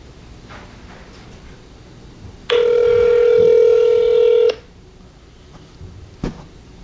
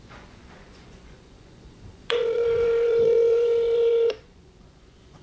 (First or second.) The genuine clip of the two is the first